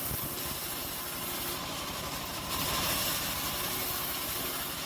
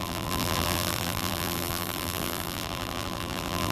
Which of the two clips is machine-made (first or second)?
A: second